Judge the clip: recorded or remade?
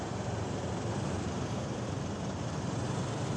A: remade